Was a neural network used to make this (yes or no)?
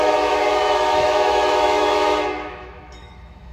yes